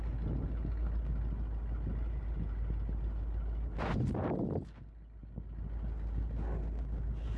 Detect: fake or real real